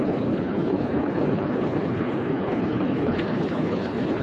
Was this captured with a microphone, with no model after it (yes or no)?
no